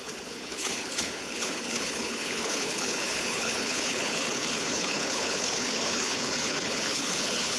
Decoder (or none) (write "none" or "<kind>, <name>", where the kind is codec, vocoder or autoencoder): codec, HILCodec